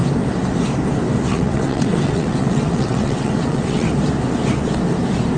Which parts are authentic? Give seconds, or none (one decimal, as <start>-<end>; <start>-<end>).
0.0-1.3; 3.9-5.4